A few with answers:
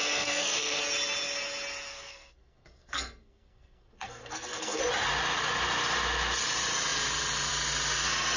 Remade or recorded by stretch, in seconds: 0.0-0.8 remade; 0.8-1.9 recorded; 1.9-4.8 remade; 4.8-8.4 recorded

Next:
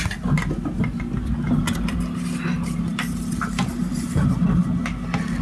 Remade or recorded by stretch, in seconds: 0.0-5.4 recorded

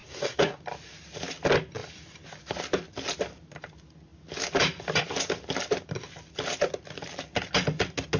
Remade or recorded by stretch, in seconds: 0.0-0.6 remade; 0.6-8.2 recorded

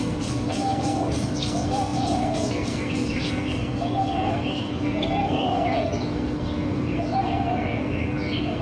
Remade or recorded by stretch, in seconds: 0.0-8.6 remade